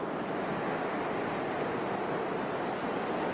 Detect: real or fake real